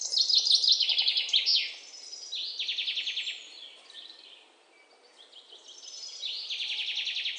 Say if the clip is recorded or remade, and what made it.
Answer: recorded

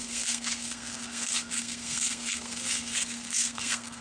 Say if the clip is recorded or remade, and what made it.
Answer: remade, codec, SNAC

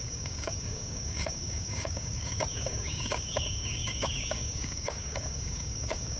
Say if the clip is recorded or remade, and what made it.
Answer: remade, codec, DAC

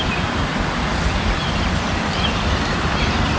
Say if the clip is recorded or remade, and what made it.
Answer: recorded